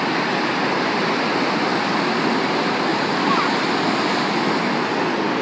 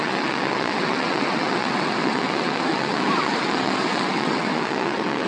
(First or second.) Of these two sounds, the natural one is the first